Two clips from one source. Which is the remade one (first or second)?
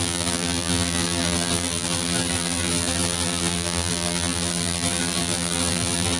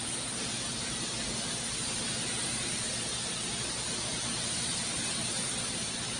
first